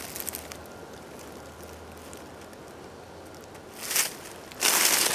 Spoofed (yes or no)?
no